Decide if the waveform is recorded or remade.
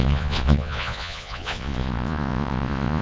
remade